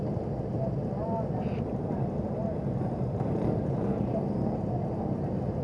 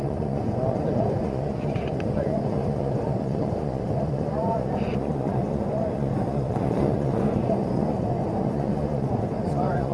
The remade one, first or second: second